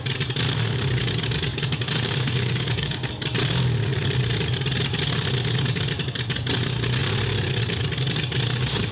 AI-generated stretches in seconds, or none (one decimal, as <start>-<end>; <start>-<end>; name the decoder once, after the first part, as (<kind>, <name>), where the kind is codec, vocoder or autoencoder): 1.5-3.1 (codec, DAC)